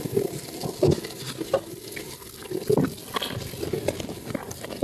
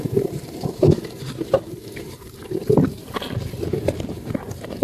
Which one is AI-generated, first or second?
second